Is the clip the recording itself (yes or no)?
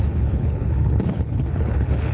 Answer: no